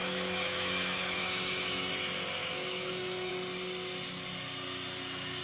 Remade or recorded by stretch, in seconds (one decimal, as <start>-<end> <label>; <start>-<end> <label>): 0.0-1.9 remade; 1.9-2.4 recorded; 2.4-3.3 remade; 3.3-5.4 recorded